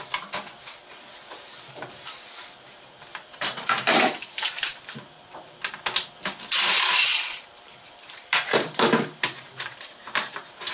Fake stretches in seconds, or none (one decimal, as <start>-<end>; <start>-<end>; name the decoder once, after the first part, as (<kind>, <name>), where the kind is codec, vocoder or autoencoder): 1.3-5.7 (vocoder, BigVGAN v2); 7.1-10.7